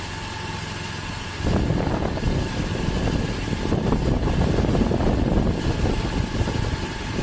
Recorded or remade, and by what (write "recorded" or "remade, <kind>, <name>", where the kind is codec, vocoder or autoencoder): recorded